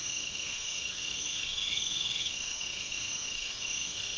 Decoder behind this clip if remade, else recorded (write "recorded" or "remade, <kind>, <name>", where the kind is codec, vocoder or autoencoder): remade, autoencoder, DAC-VAE